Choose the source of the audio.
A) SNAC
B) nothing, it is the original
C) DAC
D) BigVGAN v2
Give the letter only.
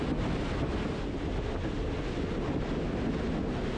B